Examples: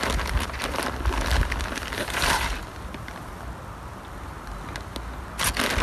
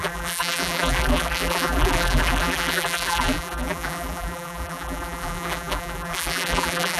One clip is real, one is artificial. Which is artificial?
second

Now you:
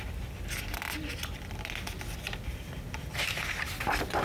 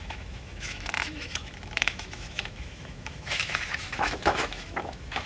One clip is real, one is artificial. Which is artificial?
second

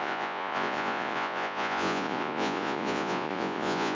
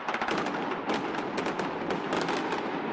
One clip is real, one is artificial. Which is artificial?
first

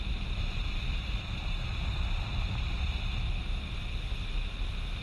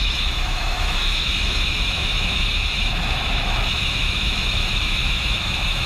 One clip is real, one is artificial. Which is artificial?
second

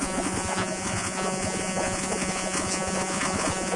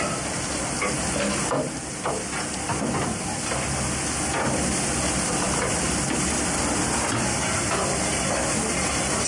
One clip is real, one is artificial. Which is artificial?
first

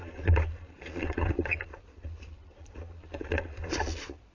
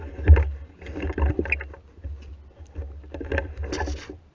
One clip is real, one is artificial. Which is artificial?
first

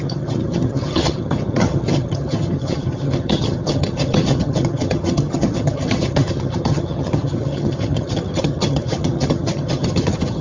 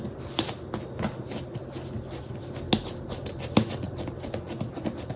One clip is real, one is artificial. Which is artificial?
first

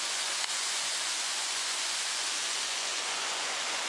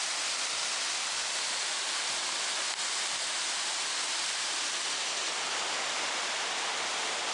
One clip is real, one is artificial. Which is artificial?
first